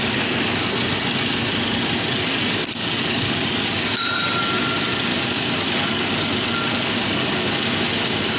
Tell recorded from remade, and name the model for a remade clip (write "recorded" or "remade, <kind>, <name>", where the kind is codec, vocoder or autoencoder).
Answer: recorded